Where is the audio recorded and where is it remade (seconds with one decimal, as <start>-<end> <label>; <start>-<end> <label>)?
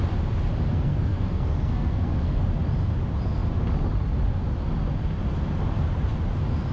0.0-0.7 recorded; 0.7-2.4 remade; 2.4-6.7 recorded